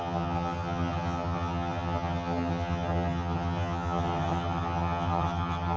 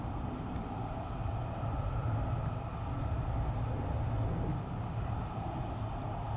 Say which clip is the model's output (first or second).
first